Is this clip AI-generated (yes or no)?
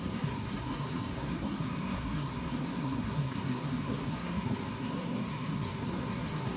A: yes